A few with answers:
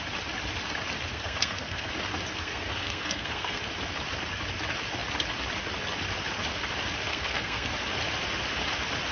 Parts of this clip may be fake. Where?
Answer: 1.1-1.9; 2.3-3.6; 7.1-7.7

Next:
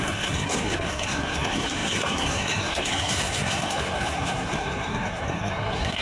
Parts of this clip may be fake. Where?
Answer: 0.0-6.0

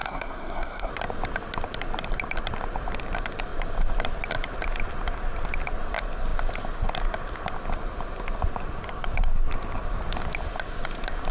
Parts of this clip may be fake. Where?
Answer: 0.0-0.9

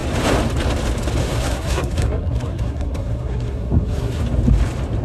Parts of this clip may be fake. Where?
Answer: 1.2-4.2